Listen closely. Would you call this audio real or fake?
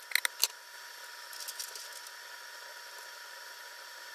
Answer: real